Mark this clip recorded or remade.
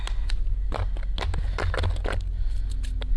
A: recorded